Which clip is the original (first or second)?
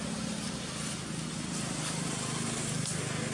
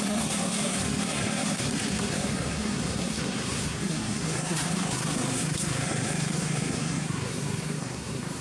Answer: first